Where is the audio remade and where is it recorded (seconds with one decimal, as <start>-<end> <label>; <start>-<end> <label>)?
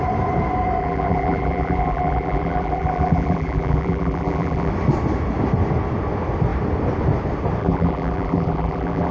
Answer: 0.0-0.8 recorded; 0.8-4.7 remade; 4.7-7.6 recorded; 7.6-9.1 remade